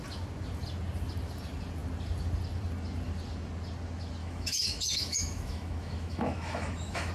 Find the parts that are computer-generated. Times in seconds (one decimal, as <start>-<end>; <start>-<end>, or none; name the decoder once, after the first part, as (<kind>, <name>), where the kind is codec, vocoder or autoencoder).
4.2-7.1 (autoencoder, DAC-VAE)